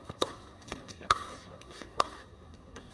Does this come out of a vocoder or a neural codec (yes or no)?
yes